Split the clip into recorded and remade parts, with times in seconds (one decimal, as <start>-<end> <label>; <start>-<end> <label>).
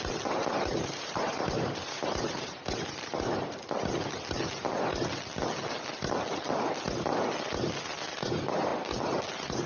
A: 0.0-0.7 recorded; 0.7-3.9 remade; 3.9-9.7 recorded